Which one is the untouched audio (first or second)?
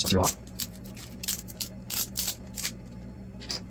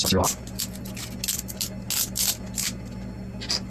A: second